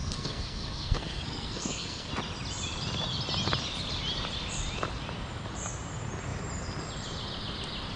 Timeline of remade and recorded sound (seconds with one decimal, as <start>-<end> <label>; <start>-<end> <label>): 0.0-2.1 remade; 2.1-8.0 recorded